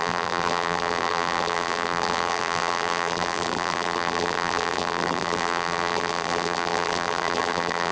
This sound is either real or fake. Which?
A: fake